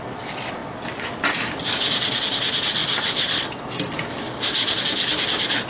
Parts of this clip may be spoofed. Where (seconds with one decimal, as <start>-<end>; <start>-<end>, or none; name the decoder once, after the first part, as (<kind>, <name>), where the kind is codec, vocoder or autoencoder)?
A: none